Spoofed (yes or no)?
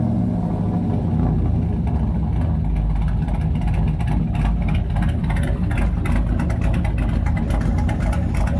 no